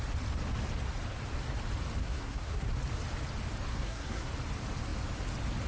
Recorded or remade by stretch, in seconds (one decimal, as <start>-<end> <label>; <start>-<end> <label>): 0.0-2.0 recorded; 2.0-2.7 remade; 2.7-3.7 recorded; 3.7-4.3 remade; 4.3-5.7 recorded